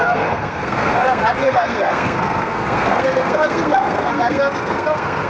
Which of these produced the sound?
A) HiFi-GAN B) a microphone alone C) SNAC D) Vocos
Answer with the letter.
C